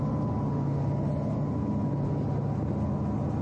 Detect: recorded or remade recorded